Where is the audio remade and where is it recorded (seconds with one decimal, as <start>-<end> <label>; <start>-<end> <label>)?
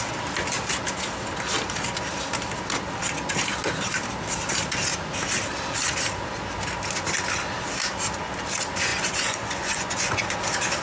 0.0-8.9 recorded; 8.9-10.2 remade; 10.2-10.8 recorded